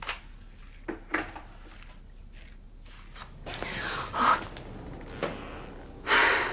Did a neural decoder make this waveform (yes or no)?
no